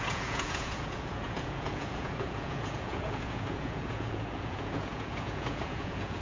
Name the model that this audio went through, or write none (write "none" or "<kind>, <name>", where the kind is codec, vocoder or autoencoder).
vocoder, Vocos